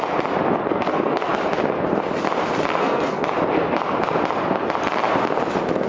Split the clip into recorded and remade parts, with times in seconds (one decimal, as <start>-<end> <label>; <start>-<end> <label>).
0.0-0.7 recorded; 0.7-1.3 remade; 1.3-2.7 recorded; 2.7-3.2 remade; 3.2-5.9 recorded